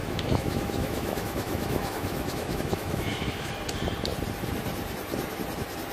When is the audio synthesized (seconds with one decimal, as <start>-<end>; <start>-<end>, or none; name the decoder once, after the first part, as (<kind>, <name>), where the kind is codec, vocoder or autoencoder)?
0.0-3.5 (autoencoder, DAC-VAE)